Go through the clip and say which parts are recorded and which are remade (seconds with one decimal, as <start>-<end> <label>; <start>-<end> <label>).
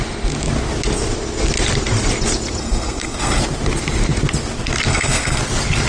0.0-2.6 recorded; 2.6-3.4 remade; 3.4-4.9 recorded; 4.9-5.4 remade; 5.4-5.9 recorded